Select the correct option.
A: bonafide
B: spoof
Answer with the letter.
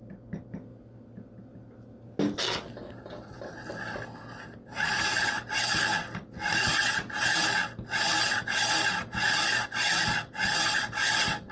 A